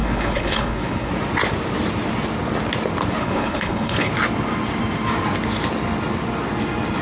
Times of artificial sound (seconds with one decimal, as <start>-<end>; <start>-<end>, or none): 0.0-1.1; 3.2-4.1